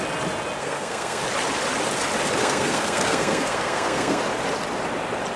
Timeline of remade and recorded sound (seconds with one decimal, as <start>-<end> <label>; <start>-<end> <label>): 0.0-0.6 recorded; 0.6-1.2 remade; 1.2-2.4 recorded; 2.4-4.2 remade; 4.2-5.4 recorded